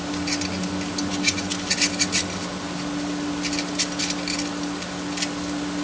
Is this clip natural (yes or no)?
yes